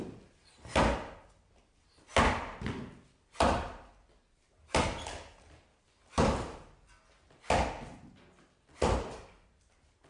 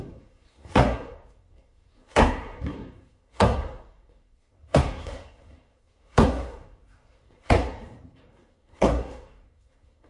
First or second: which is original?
first